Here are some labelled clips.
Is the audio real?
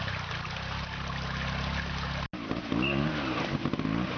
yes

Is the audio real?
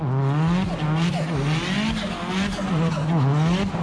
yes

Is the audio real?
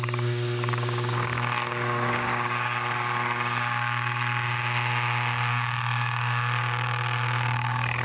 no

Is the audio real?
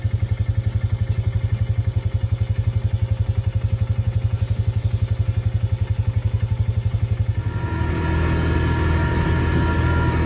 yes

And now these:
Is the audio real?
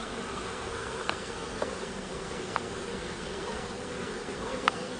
no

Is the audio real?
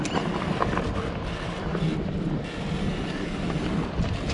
yes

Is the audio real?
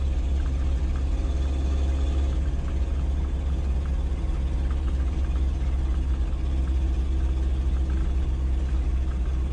yes